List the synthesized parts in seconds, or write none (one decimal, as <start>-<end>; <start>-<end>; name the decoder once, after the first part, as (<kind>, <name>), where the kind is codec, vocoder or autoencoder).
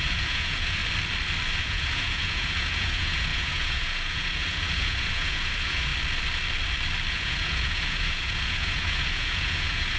0.0-0.8 (vocoder, Vocos); 1.6-5.9; 7.1-10.0